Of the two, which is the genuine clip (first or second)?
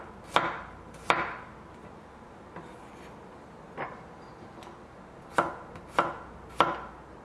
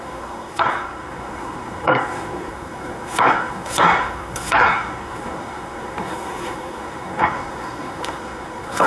first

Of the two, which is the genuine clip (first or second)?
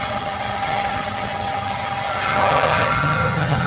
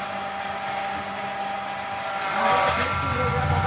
second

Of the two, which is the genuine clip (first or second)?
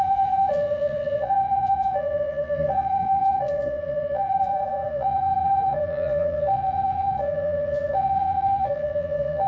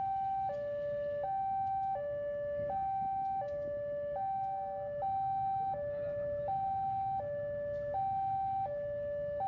second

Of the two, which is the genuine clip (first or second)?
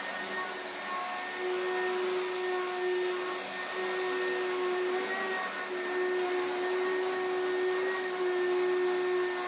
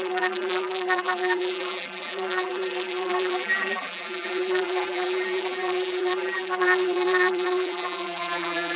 first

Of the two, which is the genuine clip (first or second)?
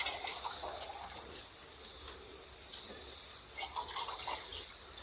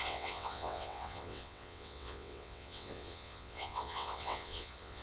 first